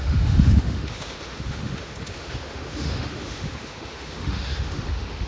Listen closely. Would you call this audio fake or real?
fake